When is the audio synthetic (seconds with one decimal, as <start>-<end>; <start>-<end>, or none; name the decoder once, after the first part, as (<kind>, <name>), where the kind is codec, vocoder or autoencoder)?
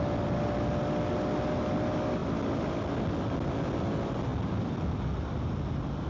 none